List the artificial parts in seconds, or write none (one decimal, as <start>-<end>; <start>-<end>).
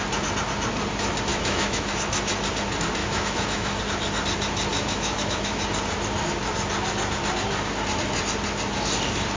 1.3-1.9; 3.0-3.8; 4.7-5.6